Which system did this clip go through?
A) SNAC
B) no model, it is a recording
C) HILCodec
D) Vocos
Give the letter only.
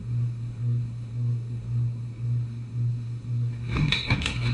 A